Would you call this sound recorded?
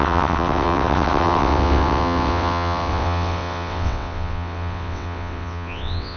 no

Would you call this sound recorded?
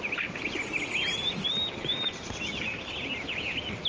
yes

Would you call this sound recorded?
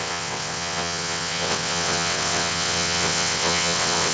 no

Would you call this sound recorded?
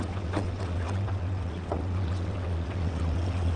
no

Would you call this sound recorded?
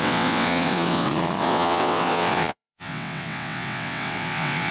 no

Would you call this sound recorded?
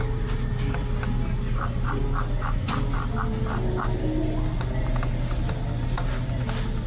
yes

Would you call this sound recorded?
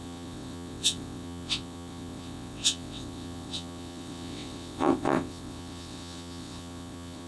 no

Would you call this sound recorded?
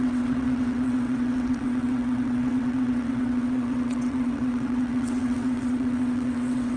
no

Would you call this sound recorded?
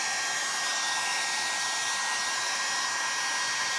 yes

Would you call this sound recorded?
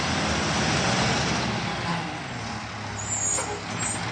yes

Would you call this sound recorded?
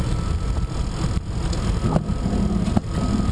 yes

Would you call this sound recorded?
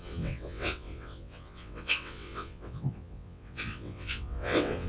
no